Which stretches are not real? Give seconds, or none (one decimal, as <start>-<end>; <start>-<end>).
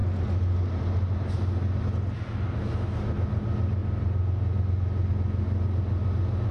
none